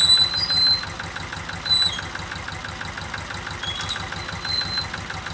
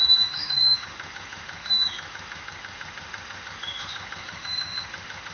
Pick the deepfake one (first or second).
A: second